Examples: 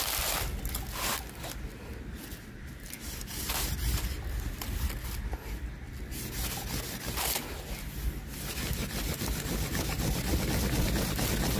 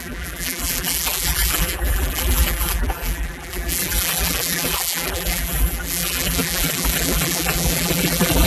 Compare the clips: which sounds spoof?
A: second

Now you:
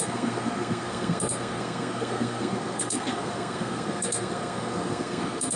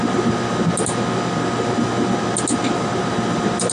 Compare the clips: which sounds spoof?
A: first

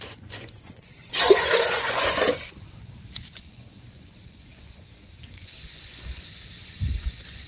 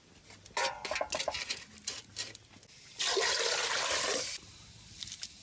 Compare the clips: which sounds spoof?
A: first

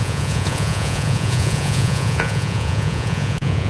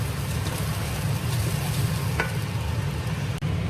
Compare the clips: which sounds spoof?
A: first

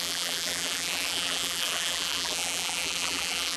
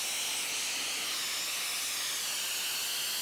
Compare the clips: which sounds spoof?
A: first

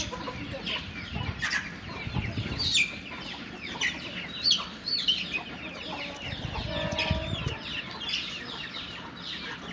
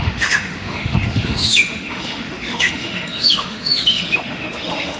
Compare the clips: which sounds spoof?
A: second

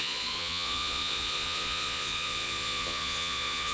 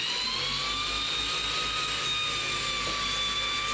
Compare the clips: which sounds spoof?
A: first